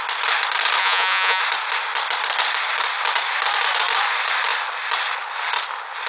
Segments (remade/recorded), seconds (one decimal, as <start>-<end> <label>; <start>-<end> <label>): 0.0-0.8 recorded; 0.8-1.4 remade; 1.4-6.1 recorded